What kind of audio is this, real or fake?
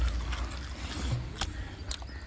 real